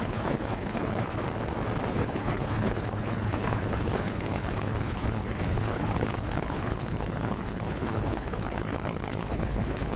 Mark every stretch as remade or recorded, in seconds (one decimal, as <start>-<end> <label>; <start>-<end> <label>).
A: 0.0-1.2 remade; 1.2-1.9 recorded; 1.9-10.0 remade